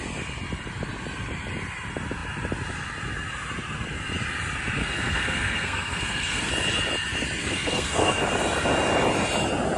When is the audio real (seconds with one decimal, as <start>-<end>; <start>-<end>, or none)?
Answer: 0.0-4.8; 6.5-7.4; 8.2-9.8